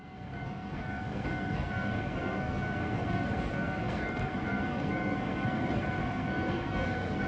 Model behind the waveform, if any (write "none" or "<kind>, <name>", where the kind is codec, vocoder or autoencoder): codec, SNAC